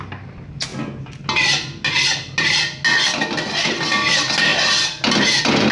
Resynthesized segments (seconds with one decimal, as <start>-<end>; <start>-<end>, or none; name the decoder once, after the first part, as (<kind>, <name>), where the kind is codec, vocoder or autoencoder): none